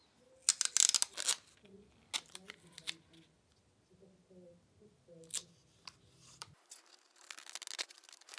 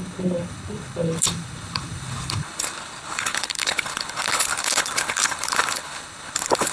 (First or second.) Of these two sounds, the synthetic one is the second